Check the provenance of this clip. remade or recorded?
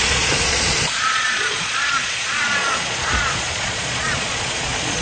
remade